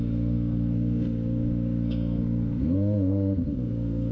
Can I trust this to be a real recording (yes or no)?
no